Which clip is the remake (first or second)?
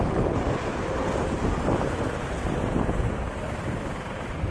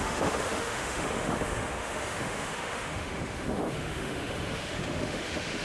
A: second